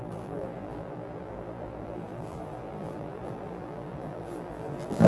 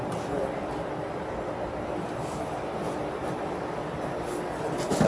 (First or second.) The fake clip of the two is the first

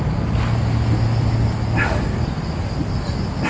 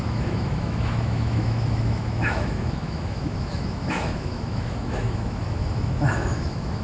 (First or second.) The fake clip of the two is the second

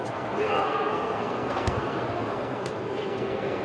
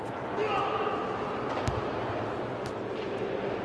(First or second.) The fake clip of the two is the first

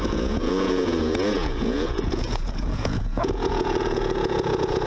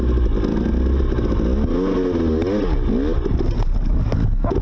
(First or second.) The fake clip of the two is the first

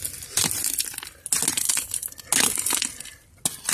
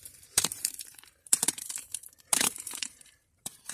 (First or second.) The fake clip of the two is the second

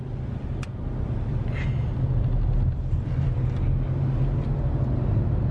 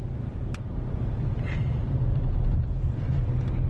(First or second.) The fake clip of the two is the second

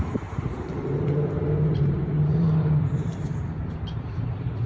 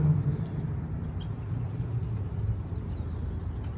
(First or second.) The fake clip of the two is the first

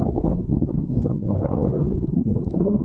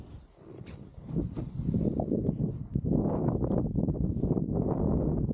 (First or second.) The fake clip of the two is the first